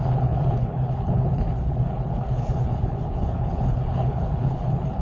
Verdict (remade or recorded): remade